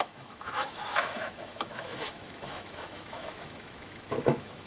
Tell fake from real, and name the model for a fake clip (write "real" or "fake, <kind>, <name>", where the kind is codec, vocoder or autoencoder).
fake, autoencoder, DAC-VAE